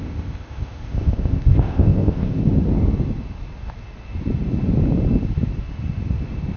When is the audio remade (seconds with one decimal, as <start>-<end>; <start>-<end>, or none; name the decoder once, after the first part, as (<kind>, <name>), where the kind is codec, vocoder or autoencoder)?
0.0-2.4 (codec, ZipCodec)